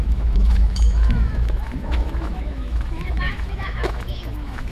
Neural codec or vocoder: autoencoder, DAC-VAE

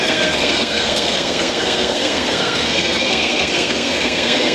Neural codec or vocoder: codec, SNAC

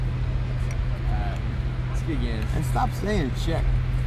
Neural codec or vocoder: none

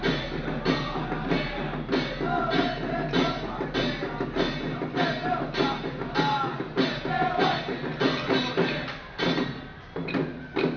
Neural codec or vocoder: none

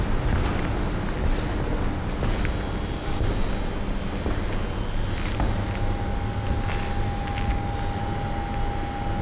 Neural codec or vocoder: none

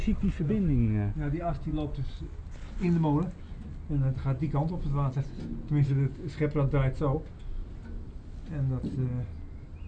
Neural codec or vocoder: none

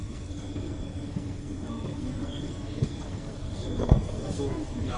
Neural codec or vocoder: codec, SNAC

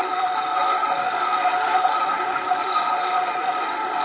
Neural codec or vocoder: autoencoder, DAC-VAE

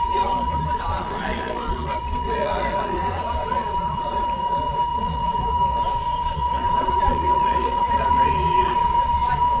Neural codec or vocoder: vocoder, Vocos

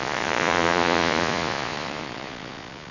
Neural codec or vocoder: vocoder, Vocos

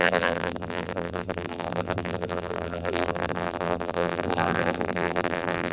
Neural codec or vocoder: vocoder, BigVGAN v2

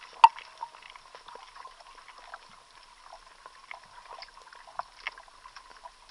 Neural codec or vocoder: none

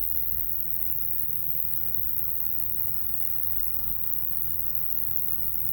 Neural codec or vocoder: autoencoder, DAC-VAE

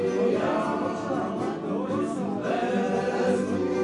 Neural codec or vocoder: none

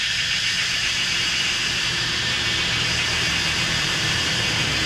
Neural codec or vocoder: vocoder, BigVGAN v2